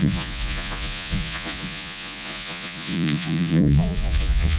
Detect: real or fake fake